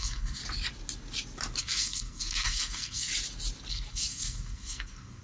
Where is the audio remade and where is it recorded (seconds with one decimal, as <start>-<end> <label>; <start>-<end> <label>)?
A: 0.0-0.4 remade; 0.4-1.6 recorded; 1.6-3.1 remade; 3.1-3.7 recorded; 3.7-5.2 remade